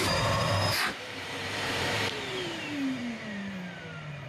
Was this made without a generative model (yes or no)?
no